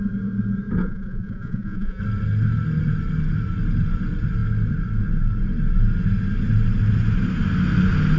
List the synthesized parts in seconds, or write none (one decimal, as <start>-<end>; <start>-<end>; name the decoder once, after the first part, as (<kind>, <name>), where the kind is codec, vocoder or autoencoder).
0.8-2.0 (vocoder, Vocos)